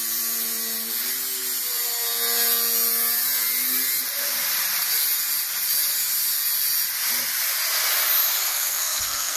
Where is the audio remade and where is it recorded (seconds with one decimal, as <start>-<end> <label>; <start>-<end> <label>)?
0.0-8.5 recorded; 8.5-9.4 remade